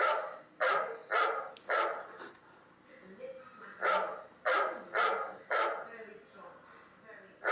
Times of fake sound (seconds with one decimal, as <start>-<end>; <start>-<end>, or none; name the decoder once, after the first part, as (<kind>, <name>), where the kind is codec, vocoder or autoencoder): none